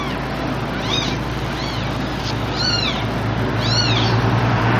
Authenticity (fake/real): real